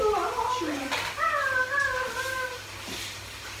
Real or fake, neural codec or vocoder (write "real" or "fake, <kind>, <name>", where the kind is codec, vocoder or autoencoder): real